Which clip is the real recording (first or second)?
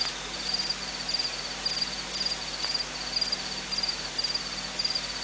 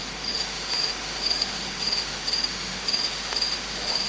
first